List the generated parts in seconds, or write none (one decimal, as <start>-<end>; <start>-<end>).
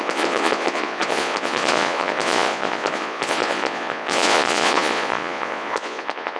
0.0-6.4